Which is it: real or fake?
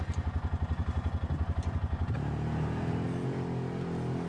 real